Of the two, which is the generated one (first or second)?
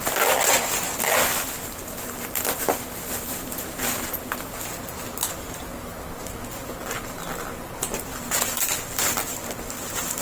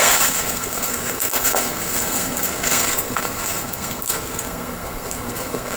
second